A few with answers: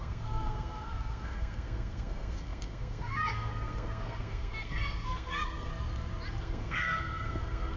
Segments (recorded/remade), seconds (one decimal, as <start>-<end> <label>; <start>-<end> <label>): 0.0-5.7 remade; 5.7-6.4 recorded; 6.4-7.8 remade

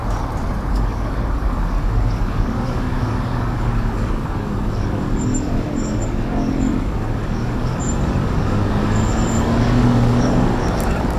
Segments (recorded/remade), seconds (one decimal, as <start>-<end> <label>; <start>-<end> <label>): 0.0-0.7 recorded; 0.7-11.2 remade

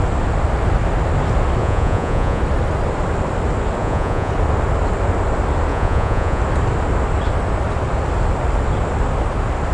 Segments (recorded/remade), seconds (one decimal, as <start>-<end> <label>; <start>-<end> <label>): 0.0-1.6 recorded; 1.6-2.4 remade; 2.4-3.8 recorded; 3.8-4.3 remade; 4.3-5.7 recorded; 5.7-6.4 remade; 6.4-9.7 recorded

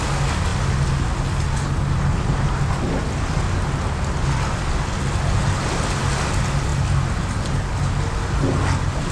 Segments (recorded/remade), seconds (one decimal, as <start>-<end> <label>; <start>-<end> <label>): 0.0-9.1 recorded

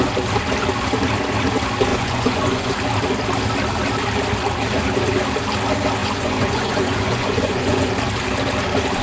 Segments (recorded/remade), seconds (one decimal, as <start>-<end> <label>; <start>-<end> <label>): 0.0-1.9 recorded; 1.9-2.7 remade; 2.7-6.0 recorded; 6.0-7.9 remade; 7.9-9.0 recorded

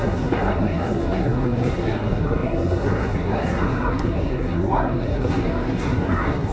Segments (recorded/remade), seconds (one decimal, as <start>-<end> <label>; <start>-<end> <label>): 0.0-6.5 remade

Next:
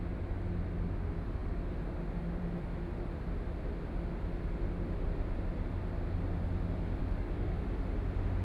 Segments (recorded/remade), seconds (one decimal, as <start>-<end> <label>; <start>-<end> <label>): 0.0-7.0 recorded; 7.0-7.6 remade; 7.6-8.4 recorded